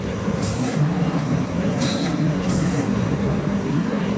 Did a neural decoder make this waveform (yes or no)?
yes